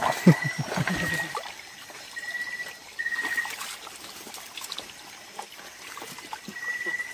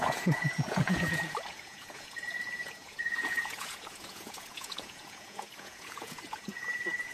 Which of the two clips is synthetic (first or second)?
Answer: second